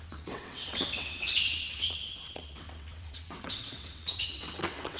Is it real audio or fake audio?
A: fake